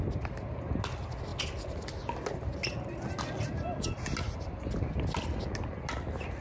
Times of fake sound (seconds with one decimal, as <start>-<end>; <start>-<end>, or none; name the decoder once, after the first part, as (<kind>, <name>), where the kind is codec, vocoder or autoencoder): none